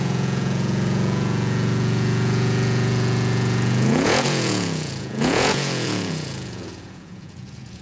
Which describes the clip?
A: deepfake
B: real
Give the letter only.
A